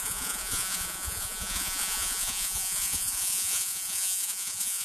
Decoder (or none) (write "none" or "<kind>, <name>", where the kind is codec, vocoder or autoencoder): vocoder, Vocos